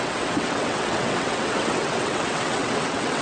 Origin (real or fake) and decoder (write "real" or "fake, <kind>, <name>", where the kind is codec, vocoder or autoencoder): fake, vocoder, WaveNeXt